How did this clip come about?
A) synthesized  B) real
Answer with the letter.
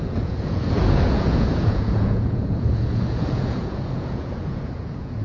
A